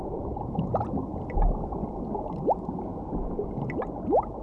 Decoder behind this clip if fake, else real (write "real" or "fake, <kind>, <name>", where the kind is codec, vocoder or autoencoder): real